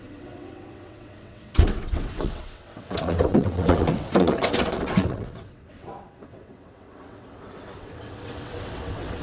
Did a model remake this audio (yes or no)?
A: yes